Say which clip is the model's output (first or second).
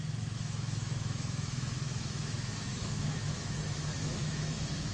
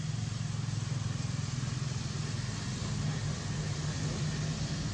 first